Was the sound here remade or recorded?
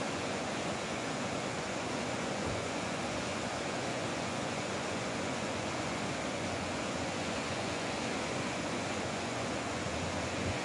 remade